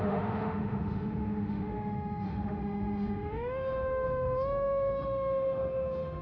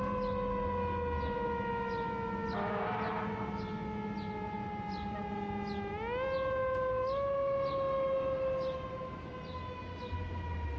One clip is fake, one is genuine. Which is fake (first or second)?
first